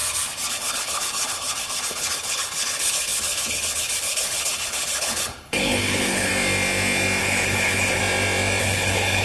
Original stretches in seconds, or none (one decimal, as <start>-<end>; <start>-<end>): 0.0-0.5; 6.3-7.2; 8.0-8.6